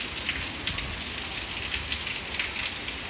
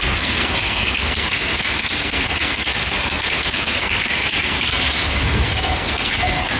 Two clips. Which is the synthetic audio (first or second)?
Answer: second